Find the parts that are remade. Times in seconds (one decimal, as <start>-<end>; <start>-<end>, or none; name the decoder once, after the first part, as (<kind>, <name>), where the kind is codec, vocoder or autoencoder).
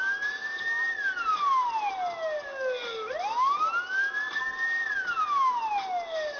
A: none